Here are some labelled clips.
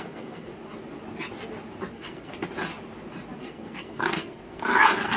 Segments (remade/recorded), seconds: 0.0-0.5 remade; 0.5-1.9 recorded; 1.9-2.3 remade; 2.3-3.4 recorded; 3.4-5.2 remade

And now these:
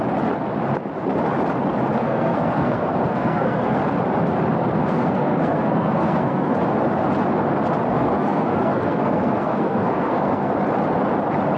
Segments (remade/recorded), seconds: 0.0-2.0 recorded; 2.0-3.8 remade; 3.8-4.6 recorded; 4.6-6.5 remade; 6.5-7.9 recorded; 7.9-10.5 remade; 10.5-11.6 recorded